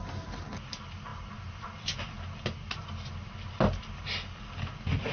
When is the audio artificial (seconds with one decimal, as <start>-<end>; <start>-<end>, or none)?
none